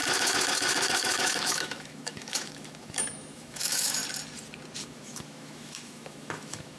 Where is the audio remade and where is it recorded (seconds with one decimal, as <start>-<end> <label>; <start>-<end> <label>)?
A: 0.0-4.0 remade; 4.0-4.8 recorded; 4.8-6.8 remade